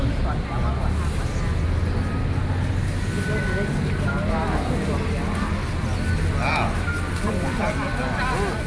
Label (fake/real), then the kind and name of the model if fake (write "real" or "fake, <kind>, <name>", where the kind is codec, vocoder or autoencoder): real